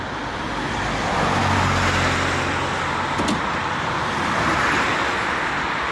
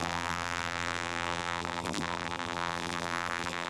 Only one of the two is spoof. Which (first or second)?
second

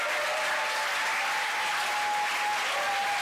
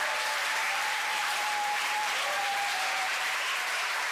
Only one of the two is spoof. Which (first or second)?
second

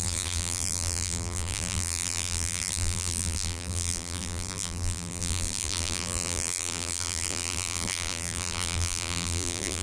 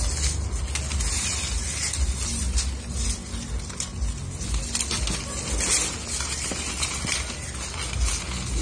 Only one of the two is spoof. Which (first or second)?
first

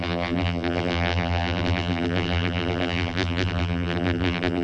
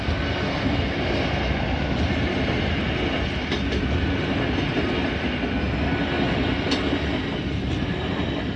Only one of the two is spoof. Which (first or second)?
first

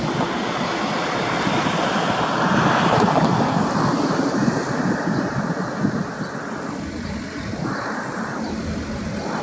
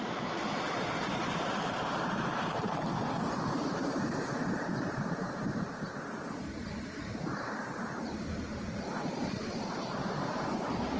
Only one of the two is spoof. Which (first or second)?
second